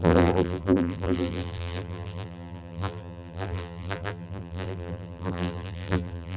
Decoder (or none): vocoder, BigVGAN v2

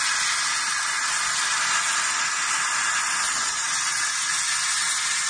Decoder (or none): none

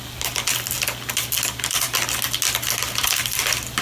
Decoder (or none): none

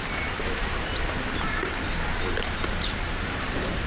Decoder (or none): vocoder, BigVGAN v2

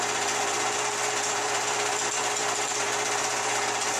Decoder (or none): vocoder, BigVGAN v2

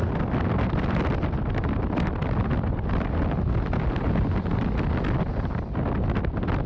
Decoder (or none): none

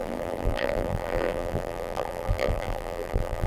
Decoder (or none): vocoder, BigVGAN v2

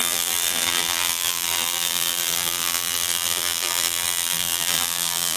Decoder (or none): vocoder, BigVGAN v2